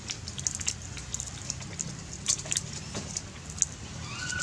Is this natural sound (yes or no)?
yes